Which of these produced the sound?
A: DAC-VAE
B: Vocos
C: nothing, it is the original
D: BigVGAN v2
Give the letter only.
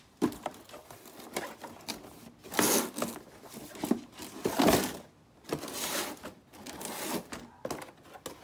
C